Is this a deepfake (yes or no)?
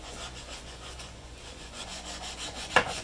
yes